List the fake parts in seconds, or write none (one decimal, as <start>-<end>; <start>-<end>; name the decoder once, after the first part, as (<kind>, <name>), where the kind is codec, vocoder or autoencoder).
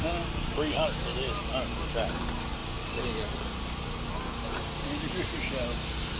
none